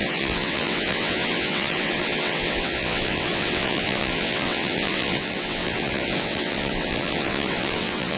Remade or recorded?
remade